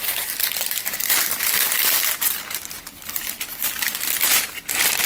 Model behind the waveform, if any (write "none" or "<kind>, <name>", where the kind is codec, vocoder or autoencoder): vocoder, BigVGAN v2